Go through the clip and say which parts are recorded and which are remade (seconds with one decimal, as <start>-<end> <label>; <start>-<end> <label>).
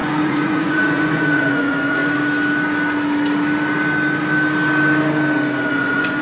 0.0-2.0 remade; 2.0-5.7 recorded; 5.7-6.2 remade